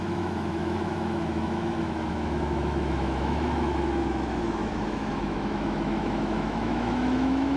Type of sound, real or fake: fake